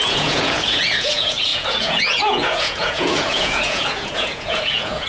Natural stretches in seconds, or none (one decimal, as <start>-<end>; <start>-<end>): none